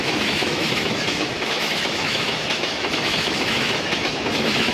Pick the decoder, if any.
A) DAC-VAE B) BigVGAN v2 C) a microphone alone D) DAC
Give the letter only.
A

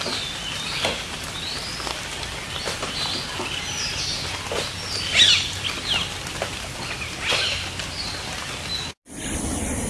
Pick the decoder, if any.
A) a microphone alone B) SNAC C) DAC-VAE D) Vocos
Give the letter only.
A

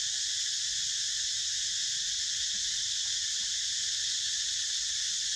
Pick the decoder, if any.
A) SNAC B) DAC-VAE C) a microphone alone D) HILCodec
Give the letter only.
C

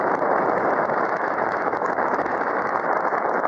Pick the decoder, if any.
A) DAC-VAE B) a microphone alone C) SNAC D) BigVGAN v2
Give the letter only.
A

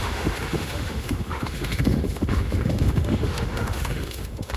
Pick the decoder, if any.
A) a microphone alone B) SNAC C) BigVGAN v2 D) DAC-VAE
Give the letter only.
D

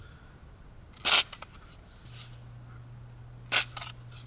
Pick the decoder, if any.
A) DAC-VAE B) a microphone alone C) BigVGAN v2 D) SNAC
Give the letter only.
B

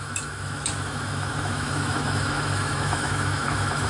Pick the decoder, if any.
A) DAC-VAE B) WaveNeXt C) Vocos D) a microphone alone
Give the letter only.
A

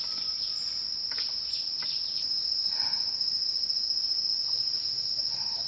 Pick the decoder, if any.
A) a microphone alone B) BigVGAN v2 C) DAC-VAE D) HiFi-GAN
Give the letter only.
A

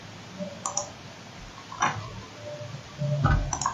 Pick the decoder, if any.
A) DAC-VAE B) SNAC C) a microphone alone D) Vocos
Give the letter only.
C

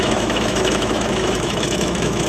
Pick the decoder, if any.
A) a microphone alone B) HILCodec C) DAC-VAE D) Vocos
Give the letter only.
C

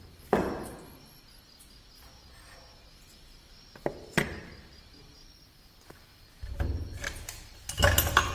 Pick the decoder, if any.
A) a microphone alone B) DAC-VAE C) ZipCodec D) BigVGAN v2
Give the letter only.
A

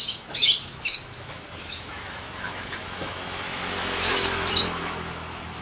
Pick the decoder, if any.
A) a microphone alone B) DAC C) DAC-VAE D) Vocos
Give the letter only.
C